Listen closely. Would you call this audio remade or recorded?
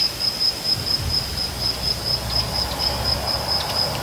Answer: recorded